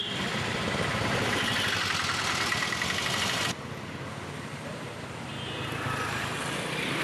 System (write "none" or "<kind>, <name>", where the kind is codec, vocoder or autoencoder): none